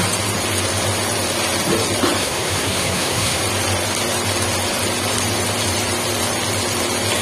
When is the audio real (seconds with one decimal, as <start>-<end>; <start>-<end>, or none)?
0.0-2.2; 3.4-7.2